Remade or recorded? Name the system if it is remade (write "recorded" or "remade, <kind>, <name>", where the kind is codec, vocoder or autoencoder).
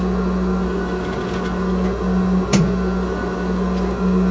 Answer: recorded